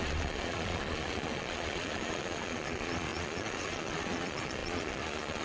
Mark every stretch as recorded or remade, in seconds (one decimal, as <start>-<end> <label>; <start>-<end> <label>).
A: 0.0-5.4 remade